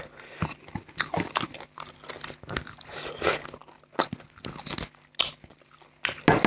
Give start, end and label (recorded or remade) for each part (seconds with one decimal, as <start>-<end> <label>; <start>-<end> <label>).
0.0-6.5 recorded